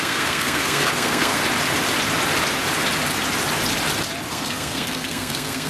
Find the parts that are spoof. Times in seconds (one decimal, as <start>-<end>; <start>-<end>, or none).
0.0-1.4; 4.3-5.7